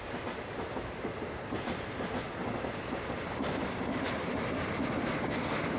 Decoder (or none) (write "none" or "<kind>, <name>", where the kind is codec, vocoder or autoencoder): none